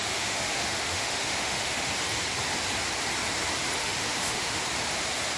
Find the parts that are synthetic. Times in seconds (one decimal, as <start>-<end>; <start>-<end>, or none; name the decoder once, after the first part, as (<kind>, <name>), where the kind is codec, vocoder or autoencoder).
0.0-1.9 (autoencoder, DAC-VAE); 3.8-4.6